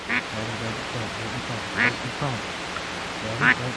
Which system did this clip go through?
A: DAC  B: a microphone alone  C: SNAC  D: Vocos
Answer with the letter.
B